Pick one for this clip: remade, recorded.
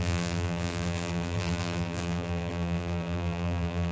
remade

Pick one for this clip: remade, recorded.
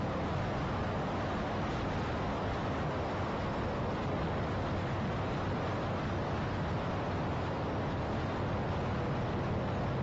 recorded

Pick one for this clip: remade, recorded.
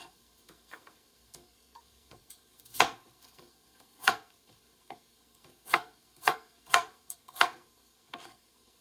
remade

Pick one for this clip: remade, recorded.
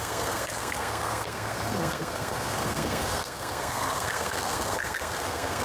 remade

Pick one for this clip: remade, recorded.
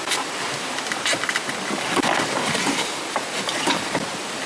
recorded